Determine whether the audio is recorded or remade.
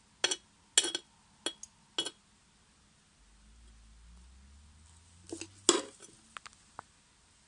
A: recorded